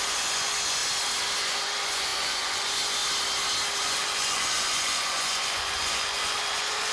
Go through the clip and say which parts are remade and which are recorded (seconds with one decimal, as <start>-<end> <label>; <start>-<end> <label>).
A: 0.0-0.8 remade; 0.8-1.4 recorded; 1.4-3.0 remade; 3.0-3.8 recorded; 3.8-6.9 remade